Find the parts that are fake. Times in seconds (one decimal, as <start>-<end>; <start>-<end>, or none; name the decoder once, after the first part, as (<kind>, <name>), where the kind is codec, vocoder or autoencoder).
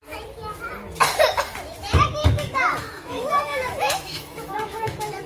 2.2-5.3 (autoencoder, DAC-VAE)